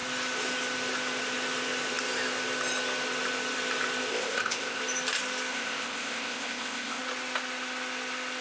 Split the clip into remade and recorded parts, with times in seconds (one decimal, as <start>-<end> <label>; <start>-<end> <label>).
0.0-4.1 recorded; 4.1-4.8 remade; 4.8-5.5 recorded; 5.5-7.0 remade; 7.0-8.4 recorded